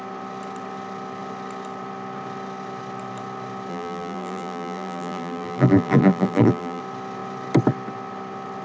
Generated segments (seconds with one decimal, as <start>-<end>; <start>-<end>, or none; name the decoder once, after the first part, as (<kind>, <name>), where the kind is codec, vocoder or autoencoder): 3.7-6.8 (vocoder, BigVGAN v2)